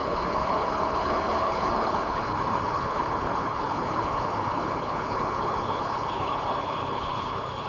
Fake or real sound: fake